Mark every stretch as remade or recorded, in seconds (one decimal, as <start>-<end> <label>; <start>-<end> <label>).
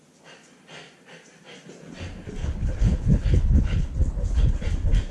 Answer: 0.0-2.4 recorded; 2.4-4.6 remade; 4.6-5.1 recorded